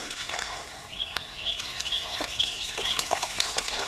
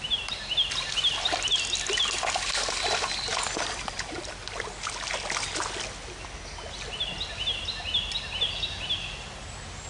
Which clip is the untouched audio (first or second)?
second